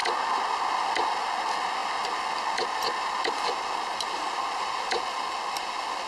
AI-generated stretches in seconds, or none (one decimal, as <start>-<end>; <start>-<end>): none